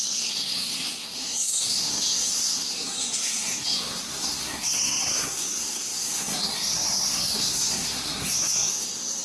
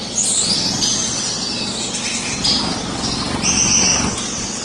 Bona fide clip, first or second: second